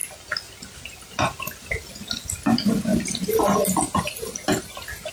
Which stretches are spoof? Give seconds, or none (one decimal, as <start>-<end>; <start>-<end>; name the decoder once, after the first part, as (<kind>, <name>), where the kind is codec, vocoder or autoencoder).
none